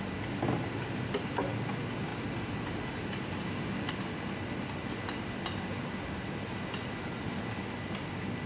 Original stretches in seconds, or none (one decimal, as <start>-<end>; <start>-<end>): 0.0-2.1; 3.9-8.5